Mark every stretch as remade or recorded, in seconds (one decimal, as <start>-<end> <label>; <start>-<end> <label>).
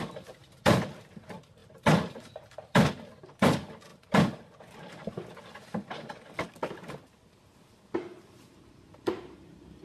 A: 0.0-9.8 remade